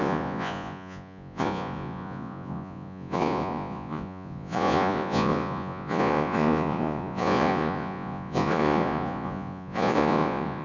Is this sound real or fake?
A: fake